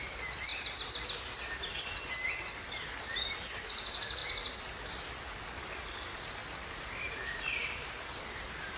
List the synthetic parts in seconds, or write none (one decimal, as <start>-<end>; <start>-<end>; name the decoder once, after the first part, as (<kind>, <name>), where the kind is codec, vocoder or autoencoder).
none